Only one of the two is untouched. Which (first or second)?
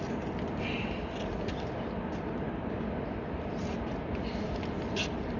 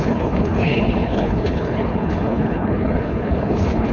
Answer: first